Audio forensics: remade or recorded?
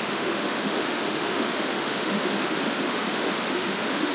remade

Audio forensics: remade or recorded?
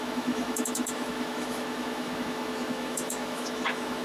remade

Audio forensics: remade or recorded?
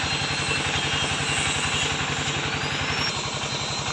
recorded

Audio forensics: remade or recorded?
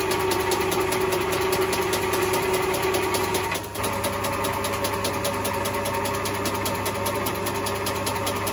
recorded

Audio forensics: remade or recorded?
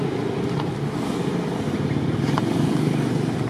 recorded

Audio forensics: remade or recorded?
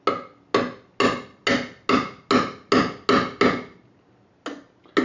recorded